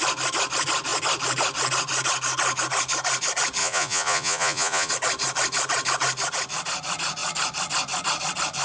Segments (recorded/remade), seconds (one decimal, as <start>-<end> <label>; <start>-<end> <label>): 0.0-3.6 recorded; 3.6-4.9 remade; 4.9-8.6 recorded